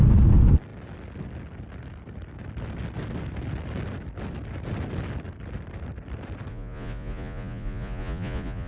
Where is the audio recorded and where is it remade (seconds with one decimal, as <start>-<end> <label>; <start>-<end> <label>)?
0.0-6.5 recorded; 6.5-8.7 remade